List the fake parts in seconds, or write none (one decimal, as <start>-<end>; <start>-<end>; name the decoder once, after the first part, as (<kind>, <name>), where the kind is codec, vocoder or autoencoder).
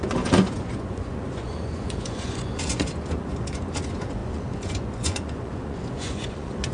0.0-6.7 (vocoder, Vocos)